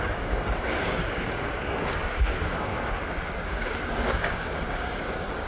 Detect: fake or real fake